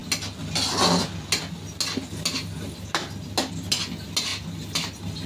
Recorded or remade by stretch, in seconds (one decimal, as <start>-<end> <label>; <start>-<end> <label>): 0.0-5.3 recorded